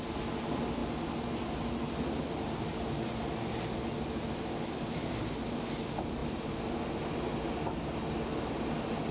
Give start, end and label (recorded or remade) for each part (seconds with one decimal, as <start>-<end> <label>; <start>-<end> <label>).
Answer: 0.0-9.1 recorded